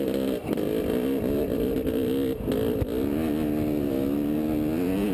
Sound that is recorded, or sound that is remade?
recorded